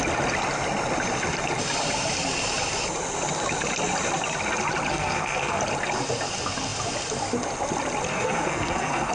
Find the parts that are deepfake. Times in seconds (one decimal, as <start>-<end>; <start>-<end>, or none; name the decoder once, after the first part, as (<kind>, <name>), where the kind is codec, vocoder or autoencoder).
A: 4.9-5.6 (codec, SNAC); 8.1-9.1